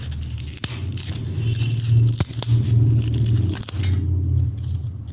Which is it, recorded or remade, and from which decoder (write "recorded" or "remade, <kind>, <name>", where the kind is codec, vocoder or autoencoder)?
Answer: recorded